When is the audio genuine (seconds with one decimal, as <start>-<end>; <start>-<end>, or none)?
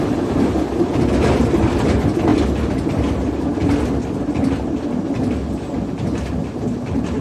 0.0-7.2